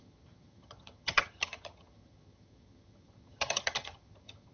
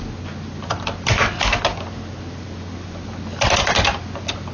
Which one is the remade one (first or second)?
first